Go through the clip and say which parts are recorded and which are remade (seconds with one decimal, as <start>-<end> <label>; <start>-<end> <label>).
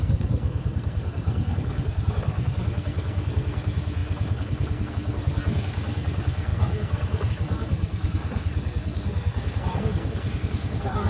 0.0-11.1 remade